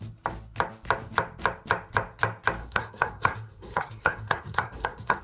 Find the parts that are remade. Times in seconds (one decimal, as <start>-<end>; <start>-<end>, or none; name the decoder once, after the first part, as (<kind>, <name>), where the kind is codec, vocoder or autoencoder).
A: 2.6-5.2 (codec, SNAC)